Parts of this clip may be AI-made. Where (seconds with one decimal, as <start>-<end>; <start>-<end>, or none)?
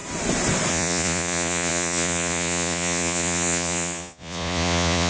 0.7-5.1